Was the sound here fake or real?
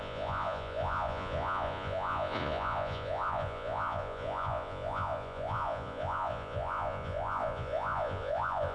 fake